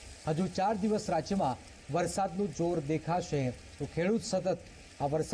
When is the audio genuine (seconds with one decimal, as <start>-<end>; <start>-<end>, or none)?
0.0-5.3